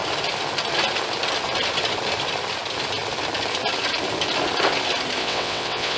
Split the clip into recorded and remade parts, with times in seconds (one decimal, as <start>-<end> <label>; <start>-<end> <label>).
0.0-5.2 recorded; 5.2-6.0 remade